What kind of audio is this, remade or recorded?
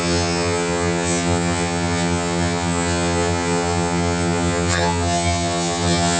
remade